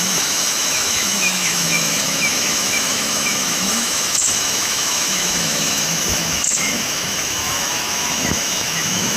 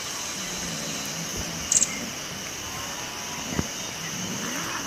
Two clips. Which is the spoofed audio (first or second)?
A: first